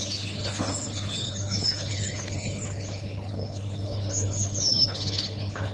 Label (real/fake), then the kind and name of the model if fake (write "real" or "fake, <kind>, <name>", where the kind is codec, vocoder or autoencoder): fake, codec, HILCodec